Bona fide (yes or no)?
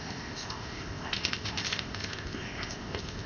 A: no